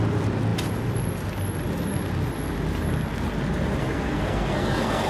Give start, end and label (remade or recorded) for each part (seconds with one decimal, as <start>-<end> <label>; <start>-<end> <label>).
0.0-3.8 recorded; 3.8-5.1 remade